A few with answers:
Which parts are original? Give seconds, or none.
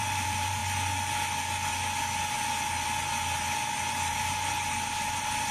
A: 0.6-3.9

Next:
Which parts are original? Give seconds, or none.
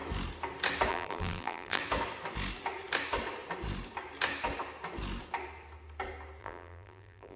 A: 0.0-0.9; 1.8-6.4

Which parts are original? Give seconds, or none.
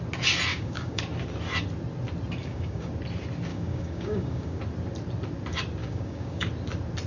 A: 0.0-0.5; 1.0-2.4; 2.9-3.5; 4.6-5.8; 6.5-7.1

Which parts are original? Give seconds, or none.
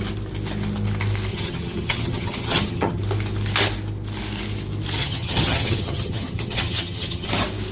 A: 0.0-1.3; 3.0-5.0; 7.3-7.7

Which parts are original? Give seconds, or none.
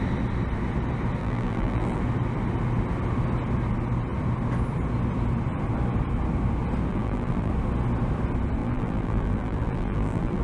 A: 0.0-1.2; 2.0-6.9; 7.5-8.6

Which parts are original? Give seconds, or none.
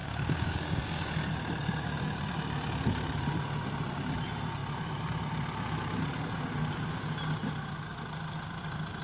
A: 1.1-9.0